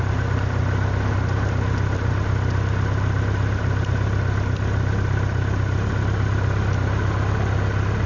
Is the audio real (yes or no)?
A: yes